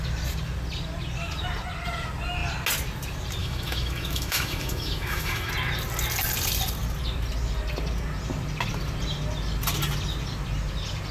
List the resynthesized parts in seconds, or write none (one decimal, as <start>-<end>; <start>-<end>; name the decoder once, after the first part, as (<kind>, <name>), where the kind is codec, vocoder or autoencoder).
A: 3.4-5.5 (autoencoder, DAC-VAE)

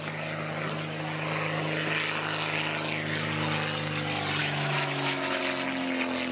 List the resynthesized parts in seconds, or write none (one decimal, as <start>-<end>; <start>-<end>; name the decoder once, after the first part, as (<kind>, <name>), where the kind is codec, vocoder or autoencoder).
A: 4.4-5.4 (autoencoder, DAC-VAE)

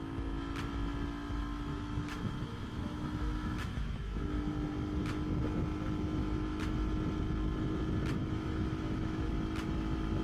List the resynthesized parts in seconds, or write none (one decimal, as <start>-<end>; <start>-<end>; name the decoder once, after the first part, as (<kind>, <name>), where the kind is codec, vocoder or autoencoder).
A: 1.7-4.5 (autoencoder, DAC-VAE); 8.2-9.3

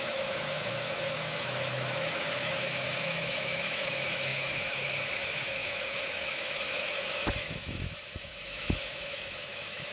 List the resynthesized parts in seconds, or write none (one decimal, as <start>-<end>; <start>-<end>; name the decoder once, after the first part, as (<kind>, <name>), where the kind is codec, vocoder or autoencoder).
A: 0.0-9.9 (autoencoder, DAC-VAE)

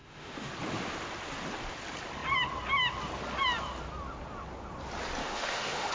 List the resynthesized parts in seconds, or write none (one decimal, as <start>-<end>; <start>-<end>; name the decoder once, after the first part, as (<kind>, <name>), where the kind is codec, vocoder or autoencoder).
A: 0.0-0.5 (autoencoder, DAC-VAE); 5.2-5.9

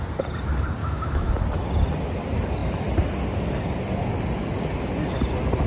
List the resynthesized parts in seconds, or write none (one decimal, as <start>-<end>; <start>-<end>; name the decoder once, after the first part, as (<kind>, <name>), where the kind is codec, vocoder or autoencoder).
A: 0.8-1.3 (autoencoder, DAC-VAE)